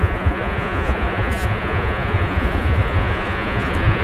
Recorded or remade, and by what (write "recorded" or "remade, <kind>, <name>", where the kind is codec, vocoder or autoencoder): remade, vocoder, Vocos